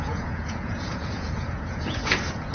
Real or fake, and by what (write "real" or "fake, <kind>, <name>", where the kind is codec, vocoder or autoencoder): fake, vocoder, Vocos